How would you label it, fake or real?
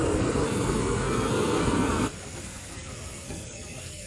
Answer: fake